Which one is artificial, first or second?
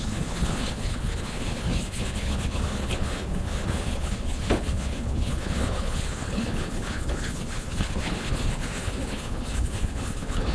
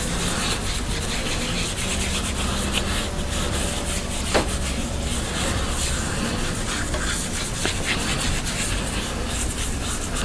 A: first